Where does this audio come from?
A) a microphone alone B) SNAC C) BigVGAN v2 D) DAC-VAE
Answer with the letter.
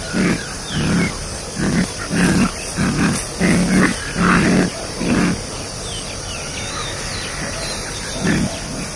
A